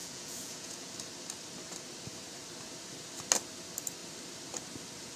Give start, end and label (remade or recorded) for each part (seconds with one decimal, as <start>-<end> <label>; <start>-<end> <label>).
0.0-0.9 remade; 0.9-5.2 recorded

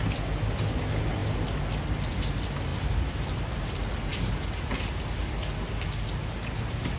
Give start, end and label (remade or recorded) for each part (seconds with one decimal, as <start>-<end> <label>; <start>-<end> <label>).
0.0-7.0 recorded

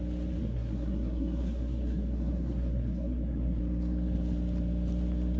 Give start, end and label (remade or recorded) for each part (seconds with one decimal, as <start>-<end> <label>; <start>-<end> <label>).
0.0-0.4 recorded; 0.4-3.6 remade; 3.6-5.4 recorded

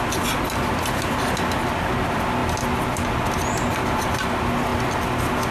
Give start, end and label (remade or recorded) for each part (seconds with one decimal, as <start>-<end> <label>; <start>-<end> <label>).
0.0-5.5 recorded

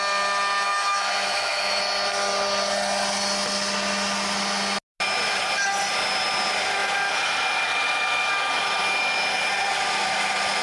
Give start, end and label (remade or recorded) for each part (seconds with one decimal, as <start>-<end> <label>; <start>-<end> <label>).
0.0-0.7 recorded; 0.7-1.8 remade; 1.8-10.6 recorded